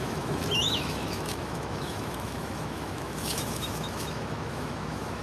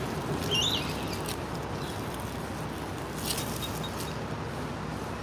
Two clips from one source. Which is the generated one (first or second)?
first